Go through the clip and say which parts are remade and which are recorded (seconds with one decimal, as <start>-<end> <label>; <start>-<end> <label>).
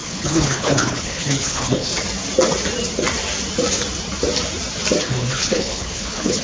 0.0-1.9 remade; 1.9-5.0 recorded; 5.0-6.4 remade